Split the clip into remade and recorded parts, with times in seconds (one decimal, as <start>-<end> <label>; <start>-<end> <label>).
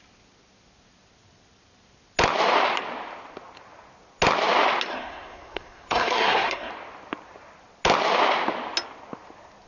0.0-4.9 recorded; 4.9-6.7 remade; 6.7-9.7 recorded